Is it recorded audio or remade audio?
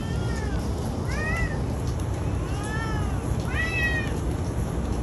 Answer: recorded